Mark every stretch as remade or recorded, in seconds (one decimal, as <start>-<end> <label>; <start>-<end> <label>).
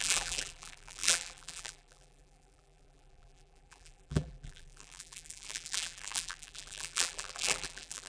0.0-8.1 remade